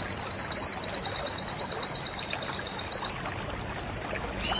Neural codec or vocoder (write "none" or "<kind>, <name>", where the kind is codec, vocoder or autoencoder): none